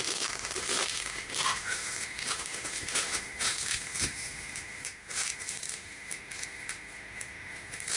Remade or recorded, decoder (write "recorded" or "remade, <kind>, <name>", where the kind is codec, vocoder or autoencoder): remade, autoencoder, DAC-VAE